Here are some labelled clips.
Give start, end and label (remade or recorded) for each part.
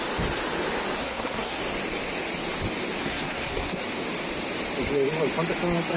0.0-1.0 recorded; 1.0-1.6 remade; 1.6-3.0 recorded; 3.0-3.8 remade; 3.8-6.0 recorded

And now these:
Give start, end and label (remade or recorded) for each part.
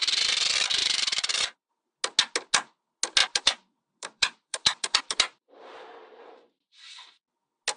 0.0-0.8 recorded; 0.8-1.9 remade; 1.9-3.2 recorded; 3.2-7.2 remade; 7.2-7.8 recorded